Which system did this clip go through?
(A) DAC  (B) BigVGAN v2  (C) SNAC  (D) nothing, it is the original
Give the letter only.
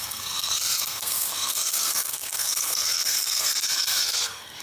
C